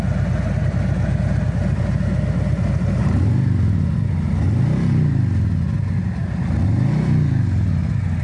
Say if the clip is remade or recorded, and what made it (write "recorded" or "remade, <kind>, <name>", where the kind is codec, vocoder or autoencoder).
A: recorded